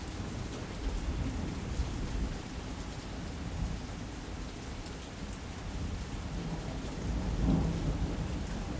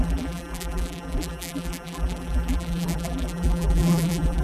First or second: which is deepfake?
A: second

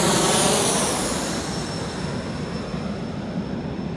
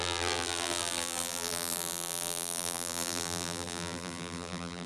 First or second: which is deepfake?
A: second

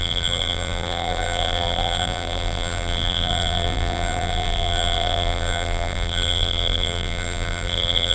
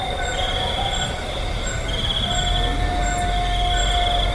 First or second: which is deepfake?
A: first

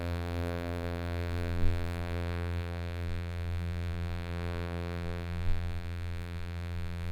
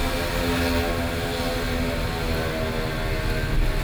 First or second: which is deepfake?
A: first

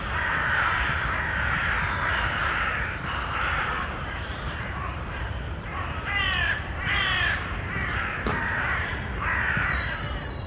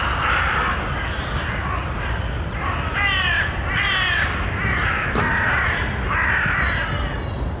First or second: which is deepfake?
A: first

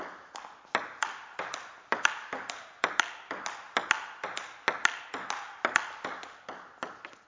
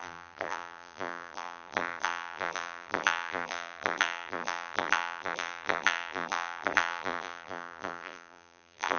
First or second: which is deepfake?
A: second